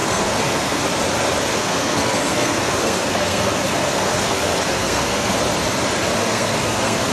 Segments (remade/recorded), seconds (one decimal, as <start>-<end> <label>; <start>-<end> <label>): 0.0-0.8 remade; 0.8-1.5 recorded; 1.5-5.4 remade; 5.4-6.2 recorded; 6.2-7.1 remade